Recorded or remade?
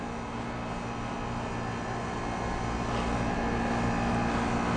recorded